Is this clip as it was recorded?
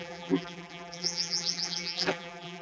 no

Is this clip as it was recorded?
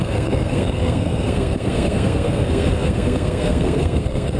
no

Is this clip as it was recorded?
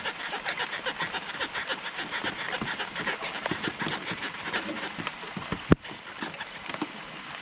yes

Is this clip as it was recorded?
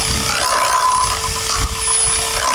yes